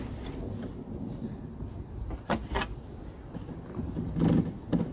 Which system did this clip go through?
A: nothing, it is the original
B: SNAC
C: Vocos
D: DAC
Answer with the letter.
A